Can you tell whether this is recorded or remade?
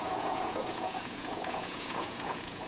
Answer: remade